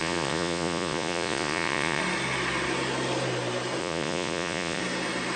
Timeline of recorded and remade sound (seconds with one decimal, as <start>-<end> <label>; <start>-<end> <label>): 0.0-2.0 remade; 2.0-3.8 recorded; 3.8-4.8 remade; 4.8-5.4 recorded